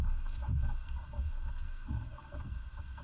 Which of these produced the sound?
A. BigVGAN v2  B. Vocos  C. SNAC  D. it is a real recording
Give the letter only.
C